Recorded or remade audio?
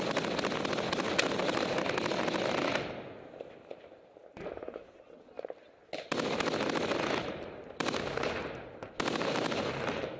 recorded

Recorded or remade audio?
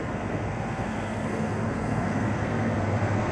remade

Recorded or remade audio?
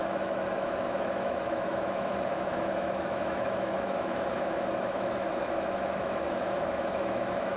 remade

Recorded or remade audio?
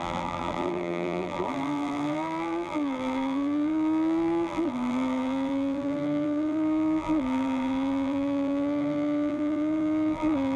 remade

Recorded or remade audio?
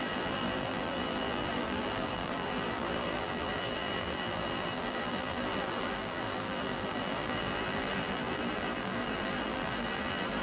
remade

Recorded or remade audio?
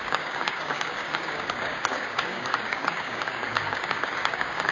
remade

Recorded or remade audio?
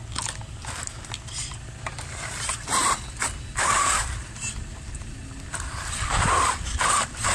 recorded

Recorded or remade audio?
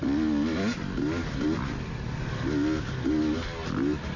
recorded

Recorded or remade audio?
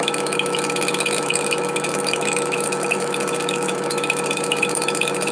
remade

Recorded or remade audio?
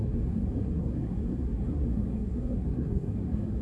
remade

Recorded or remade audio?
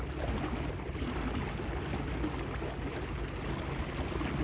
recorded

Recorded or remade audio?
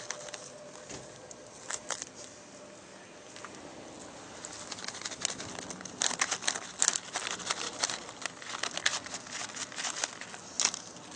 recorded